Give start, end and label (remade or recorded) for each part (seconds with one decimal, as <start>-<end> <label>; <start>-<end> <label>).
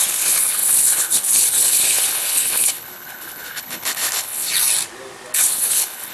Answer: 0.0-4.5 remade; 4.5-5.4 recorded; 5.4-6.1 remade